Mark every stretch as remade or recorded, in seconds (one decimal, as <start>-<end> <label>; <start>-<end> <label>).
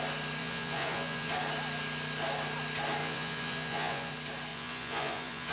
0.0-0.4 recorded; 0.4-1.3 remade; 1.3-3.0 recorded; 3.0-4.1 remade; 4.1-4.5 recorded; 4.5-5.5 remade